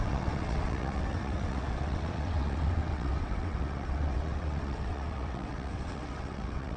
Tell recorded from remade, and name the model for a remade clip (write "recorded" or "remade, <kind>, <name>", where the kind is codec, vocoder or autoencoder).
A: remade, vocoder, WaveNeXt